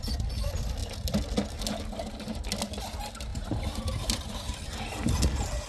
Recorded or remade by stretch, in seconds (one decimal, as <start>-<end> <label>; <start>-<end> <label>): 0.0-3.3 recorded; 3.3-5.1 remade; 5.1-5.7 recorded